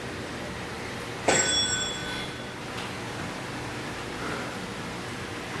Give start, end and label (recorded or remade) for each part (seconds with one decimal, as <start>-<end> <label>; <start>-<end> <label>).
0.0-2.0 remade; 2.0-5.6 recorded